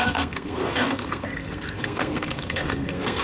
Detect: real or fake fake